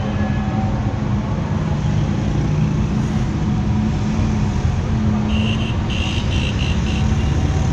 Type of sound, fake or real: real